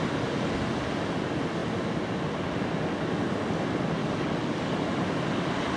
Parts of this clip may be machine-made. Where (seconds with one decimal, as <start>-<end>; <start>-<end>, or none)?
4.0-4.7